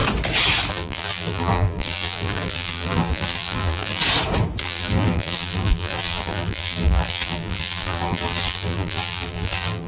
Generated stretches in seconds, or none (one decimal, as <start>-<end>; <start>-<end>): 0.7-4.0; 4.6-9.9